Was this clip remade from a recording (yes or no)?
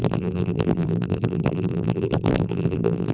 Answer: yes